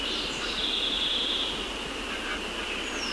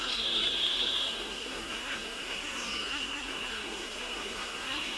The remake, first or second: second